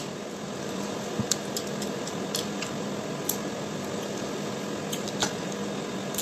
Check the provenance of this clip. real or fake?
real